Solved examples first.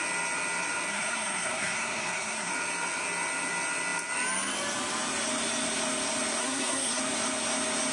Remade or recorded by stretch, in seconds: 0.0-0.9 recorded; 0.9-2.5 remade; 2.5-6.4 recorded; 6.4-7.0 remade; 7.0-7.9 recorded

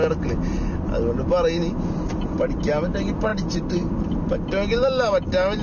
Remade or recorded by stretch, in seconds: 0.0-5.6 recorded

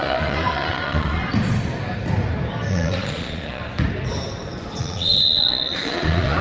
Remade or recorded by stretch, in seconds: 0.0-1.2 remade; 1.2-2.7 recorded; 2.7-3.6 remade; 3.6-4.8 recorded; 4.8-6.4 remade

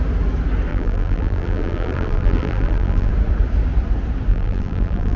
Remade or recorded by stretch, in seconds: 0.0-0.7 recorded; 0.7-3.1 remade; 3.1-4.3 recorded; 4.3-5.2 remade

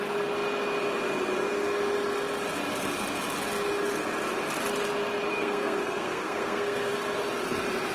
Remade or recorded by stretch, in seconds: 0.0-5.3 recorded; 5.3-6.9 remade; 6.9-7.9 recorded

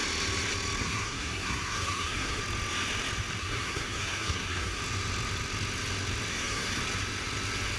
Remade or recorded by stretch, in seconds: 0.0-0.8 recorded; 0.8-2.4 remade; 2.4-3.4 recorded; 3.4-4.8 remade; 4.8-6.3 recorded; 6.3-6.8 remade; 6.8-7.8 recorded

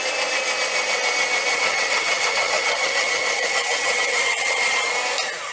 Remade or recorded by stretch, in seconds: 0.0-1.5 recorded; 1.5-4.8 remade; 4.8-5.5 recorded

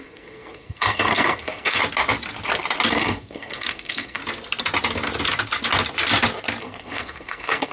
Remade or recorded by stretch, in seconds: 0.0-1.8 remade; 1.8-2.9 recorded; 2.9-4.2 remade; 4.2-6.6 recorded; 6.6-7.7 remade